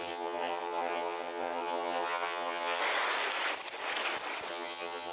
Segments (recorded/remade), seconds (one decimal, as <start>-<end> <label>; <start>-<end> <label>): 0.0-2.8 remade; 2.8-4.5 recorded; 4.5-5.1 remade